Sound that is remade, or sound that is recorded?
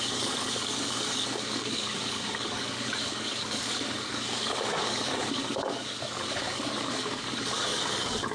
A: remade